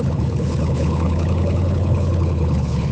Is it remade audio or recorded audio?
remade